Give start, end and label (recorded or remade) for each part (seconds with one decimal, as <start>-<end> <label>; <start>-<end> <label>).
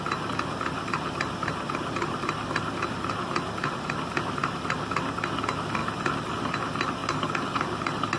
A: 0.0-8.2 recorded